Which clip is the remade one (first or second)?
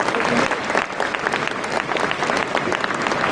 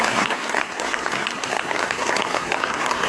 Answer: second